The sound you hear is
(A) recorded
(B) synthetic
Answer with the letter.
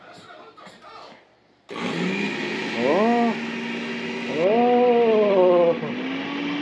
A